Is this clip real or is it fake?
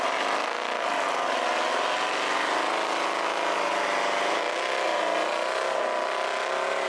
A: real